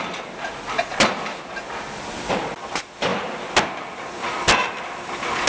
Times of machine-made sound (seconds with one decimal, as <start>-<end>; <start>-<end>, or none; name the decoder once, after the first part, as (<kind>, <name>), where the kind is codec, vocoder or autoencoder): none